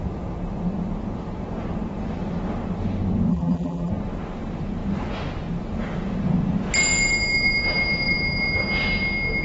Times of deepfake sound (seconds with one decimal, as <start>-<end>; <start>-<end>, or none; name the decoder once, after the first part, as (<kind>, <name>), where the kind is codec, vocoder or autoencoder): 3.3-3.9 (vocoder, BigVGAN v2)